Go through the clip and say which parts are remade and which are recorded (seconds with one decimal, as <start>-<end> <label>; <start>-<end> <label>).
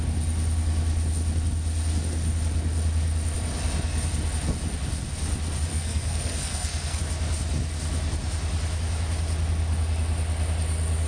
0.0-5.7 recorded; 5.7-7.0 remade; 7.0-11.1 recorded